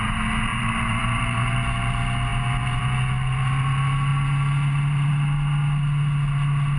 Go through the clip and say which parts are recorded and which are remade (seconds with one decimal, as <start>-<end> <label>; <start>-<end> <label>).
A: 0.0-0.5 recorded; 0.5-1.2 remade; 1.2-4.1 recorded; 4.1-5.1 remade; 5.1-6.8 recorded